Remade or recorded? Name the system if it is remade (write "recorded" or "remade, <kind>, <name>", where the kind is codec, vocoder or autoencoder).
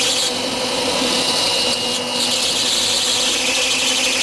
recorded